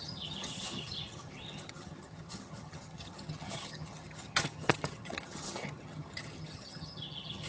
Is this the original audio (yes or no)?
no